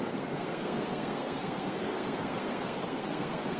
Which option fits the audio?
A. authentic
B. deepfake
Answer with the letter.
B